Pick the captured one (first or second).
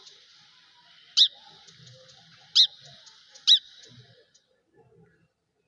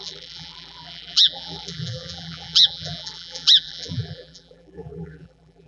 first